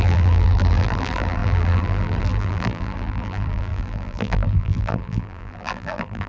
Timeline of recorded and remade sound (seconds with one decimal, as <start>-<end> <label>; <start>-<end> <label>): 0.0-6.3 remade